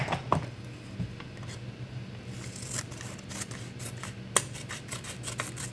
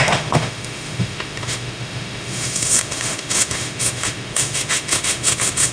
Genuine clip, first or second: first